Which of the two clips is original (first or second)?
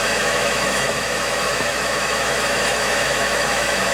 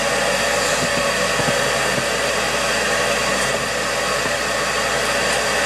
second